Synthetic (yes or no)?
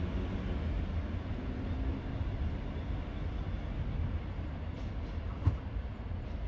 no